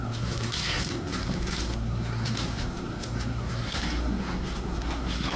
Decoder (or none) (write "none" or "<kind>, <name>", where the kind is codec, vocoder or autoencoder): codec, SNAC